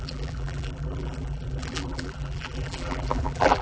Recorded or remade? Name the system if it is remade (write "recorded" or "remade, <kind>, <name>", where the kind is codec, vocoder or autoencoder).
remade, vocoder, BigVGAN v2